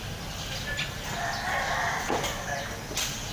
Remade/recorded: recorded